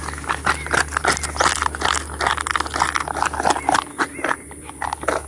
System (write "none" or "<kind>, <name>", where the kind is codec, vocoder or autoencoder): none